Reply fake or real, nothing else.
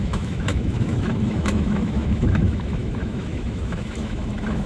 fake